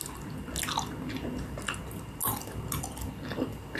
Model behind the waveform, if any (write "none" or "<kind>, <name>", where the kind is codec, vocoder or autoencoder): none